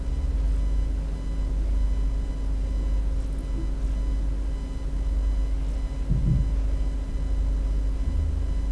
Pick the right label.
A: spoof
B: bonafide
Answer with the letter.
B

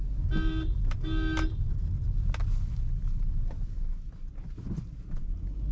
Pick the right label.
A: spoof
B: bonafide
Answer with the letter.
B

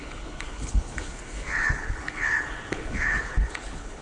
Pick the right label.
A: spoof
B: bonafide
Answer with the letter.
A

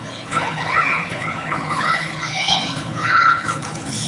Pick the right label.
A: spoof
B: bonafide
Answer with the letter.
A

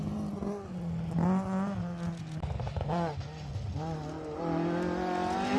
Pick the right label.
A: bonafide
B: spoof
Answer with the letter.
A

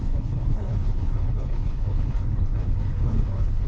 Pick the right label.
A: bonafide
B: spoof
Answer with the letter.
B